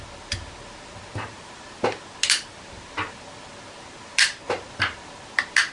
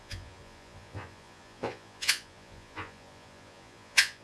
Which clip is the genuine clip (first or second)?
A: first